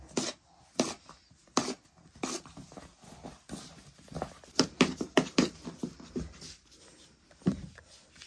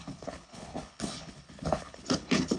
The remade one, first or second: second